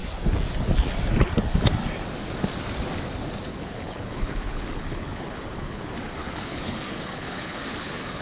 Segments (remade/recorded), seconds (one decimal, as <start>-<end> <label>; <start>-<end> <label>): 0.0-3.5 recorded; 3.5-5.8 remade; 5.8-6.2 recorded; 6.2-8.2 remade